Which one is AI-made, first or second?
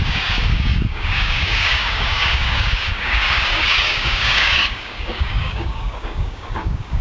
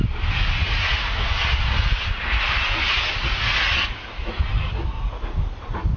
first